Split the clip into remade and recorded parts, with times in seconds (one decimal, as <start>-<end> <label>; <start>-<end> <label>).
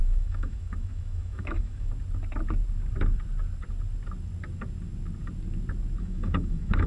0.0-1.9 remade; 1.9-6.0 recorded; 6.0-6.9 remade